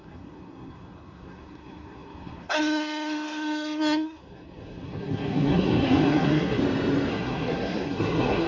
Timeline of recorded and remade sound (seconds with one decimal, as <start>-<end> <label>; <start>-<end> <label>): 0.0-6.6 remade; 6.6-7.1 recorded; 7.1-8.5 remade